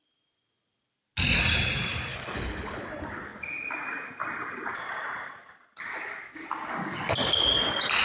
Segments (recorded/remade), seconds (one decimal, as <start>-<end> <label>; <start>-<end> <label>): 0.0-2.1 recorded; 2.1-2.8 remade; 2.8-8.0 recorded